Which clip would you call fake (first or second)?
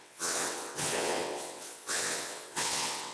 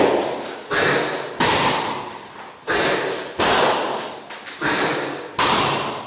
first